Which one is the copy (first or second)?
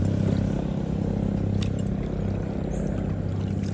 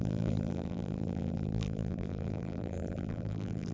second